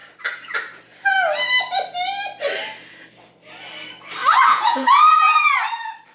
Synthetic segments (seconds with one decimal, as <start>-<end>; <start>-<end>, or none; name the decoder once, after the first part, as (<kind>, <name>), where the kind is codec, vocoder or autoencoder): 4.2-5.5 (vocoder, Vocos)